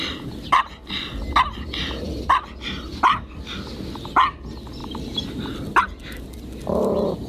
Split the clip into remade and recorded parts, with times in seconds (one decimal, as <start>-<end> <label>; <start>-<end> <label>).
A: 0.0-4.8 recorded; 4.8-5.8 remade; 5.8-7.3 recorded